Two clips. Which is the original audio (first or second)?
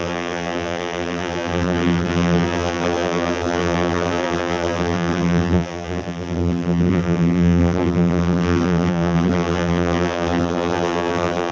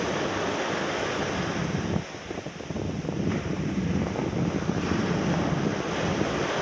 second